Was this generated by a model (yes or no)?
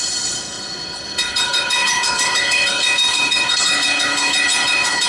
yes